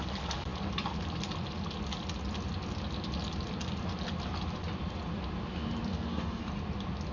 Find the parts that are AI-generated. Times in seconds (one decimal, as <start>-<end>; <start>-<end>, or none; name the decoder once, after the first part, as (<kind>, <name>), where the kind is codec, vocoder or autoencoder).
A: 5.9-6.4 (codec, SNAC)